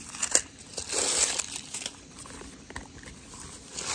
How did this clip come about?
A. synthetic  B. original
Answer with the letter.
B